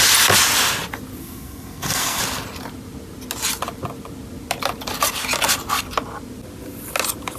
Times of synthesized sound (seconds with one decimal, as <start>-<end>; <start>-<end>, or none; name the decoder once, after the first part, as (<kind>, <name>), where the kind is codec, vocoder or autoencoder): 1.2-2.2 (codec, SNAC)